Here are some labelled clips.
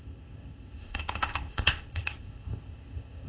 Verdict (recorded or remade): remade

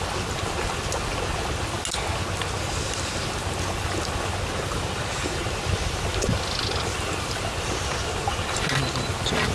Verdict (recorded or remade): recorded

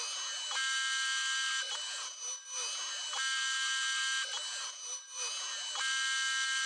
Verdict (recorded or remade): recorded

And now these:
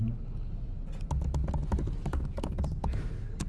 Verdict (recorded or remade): recorded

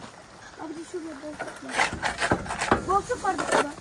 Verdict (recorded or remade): recorded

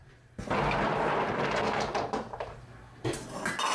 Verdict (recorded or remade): recorded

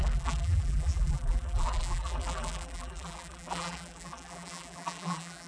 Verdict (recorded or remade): remade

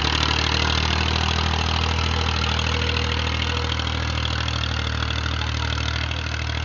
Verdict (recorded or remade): recorded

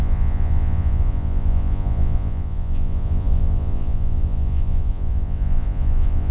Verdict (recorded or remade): remade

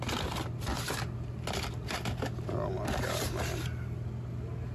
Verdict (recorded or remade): recorded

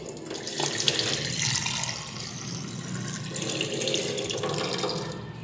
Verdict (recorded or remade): recorded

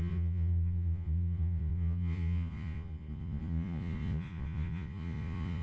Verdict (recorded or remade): remade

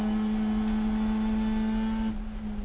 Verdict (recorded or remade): recorded